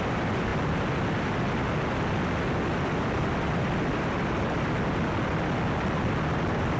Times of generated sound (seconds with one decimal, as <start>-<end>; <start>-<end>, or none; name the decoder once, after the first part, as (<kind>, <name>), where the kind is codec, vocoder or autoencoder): none